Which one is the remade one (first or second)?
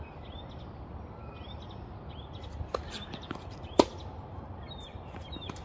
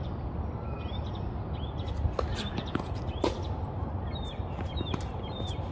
first